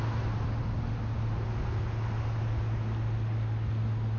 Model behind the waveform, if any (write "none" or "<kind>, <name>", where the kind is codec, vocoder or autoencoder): none